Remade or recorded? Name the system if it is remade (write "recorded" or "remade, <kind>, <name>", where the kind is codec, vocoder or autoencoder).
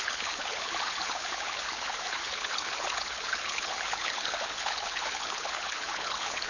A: remade, codec, HILCodec